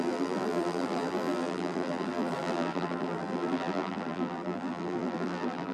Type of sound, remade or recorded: remade